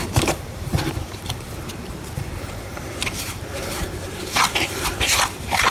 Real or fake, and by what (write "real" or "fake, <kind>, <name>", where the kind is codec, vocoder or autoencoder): fake, vocoder, BigVGAN v2